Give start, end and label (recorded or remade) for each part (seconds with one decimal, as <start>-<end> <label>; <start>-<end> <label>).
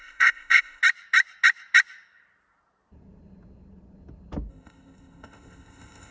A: 0.0-0.8 remade; 0.8-4.5 recorded; 4.5-6.1 remade